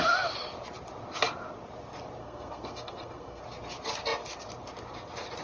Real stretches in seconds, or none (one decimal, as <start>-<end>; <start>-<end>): 0.0-2.2; 3.4-5.4